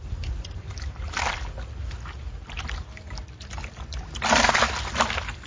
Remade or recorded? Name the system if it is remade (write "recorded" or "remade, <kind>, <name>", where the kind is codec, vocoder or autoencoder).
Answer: recorded